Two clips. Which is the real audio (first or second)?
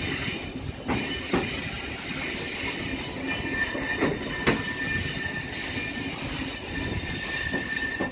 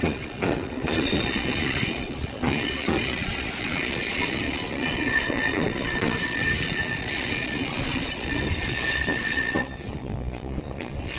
first